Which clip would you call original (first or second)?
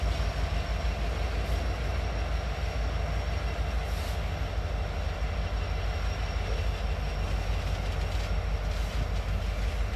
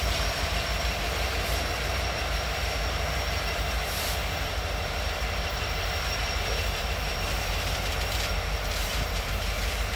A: first